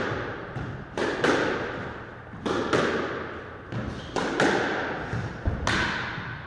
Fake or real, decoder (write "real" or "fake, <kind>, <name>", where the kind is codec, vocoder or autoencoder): real